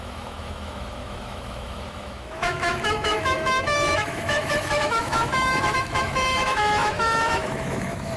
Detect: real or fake fake